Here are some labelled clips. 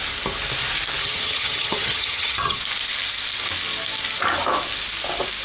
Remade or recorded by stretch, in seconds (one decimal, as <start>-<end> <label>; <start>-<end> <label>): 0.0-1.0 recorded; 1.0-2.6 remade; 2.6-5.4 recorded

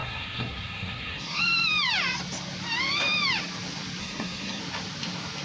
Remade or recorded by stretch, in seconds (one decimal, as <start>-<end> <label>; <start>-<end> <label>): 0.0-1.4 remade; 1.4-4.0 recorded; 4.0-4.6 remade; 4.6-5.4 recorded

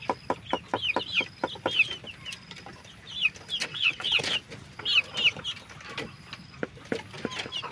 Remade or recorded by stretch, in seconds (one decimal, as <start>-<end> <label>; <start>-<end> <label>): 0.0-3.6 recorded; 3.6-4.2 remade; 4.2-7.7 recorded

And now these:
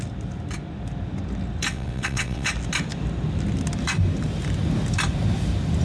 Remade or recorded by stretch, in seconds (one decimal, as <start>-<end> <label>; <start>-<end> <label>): 0.0-1.7 recorded; 1.7-2.5 remade; 2.5-5.8 recorded

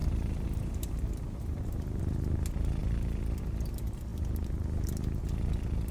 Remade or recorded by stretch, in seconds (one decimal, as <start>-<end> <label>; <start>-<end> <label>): 0.0-2.0 remade; 2.0-5.9 recorded

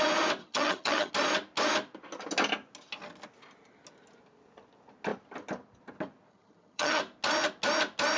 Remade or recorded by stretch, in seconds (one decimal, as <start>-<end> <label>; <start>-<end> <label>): 0.0-0.4 recorded; 0.4-1.1 remade; 1.1-6.3 recorded; 6.3-7.0 remade; 7.0-8.2 recorded

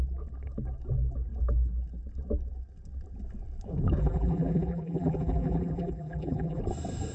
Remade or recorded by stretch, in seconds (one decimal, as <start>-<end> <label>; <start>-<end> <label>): 0.0-4.0 recorded; 4.0-6.6 remade; 6.6-7.1 recorded

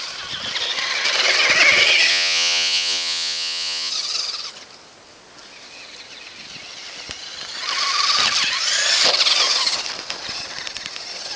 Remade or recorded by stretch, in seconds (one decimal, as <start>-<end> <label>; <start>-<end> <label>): 0.0-2.1 recorded; 2.1-3.9 remade; 3.9-11.4 recorded